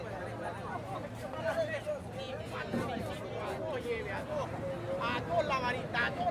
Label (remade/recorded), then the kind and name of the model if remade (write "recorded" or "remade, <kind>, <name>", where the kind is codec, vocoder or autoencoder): recorded